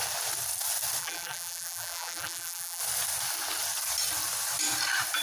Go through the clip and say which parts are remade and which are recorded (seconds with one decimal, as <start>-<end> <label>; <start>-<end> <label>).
0.0-1.0 recorded; 1.0-2.8 remade; 2.8-5.2 recorded